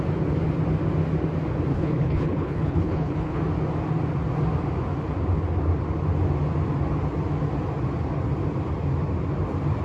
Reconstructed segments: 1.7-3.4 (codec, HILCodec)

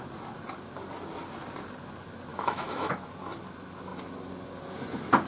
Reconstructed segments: 2.3-2.9 (autoencoder, DAC-VAE)

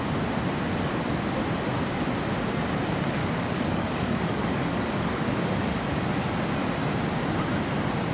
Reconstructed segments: 3.2-6.0 (codec, DAC)

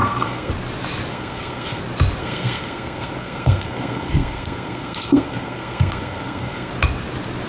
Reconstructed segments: 0.0-0.5 (codec, SNAC); 1.1-1.8; 2.2-6.7

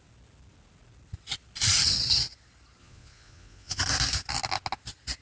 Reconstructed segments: 2.8-3.8 (vocoder, Vocos)

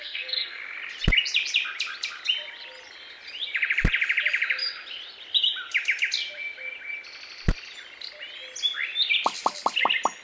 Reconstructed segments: 0.0-0.6 (codec, SNAC)

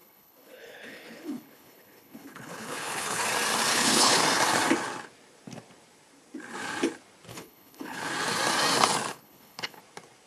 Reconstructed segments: 0.0-3.2 (codec, HILCodec); 3.7-4.2; 7.3-8.1; 9.1-9.8

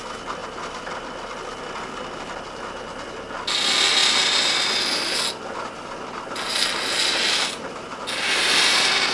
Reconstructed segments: none